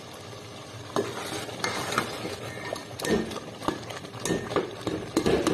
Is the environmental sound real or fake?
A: real